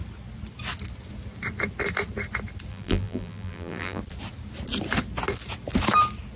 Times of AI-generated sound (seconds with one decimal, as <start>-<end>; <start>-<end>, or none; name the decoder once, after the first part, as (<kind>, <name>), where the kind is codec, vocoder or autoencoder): 2.7-4.0 (vocoder, BigVGAN v2)